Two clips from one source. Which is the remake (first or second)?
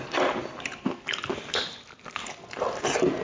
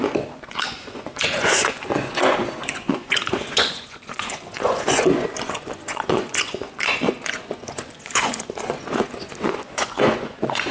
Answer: second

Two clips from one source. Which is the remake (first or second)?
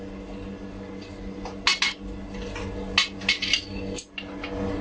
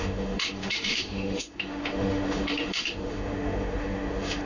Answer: second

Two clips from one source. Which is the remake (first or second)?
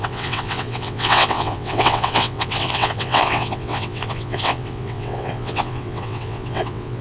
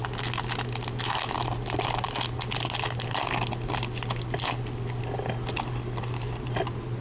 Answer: first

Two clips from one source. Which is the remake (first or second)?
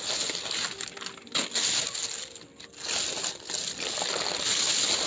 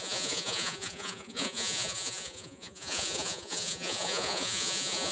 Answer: second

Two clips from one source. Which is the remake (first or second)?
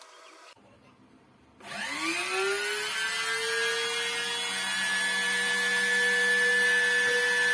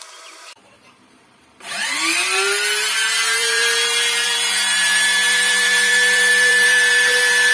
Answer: second